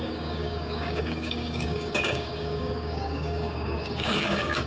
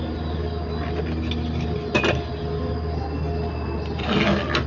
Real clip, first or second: second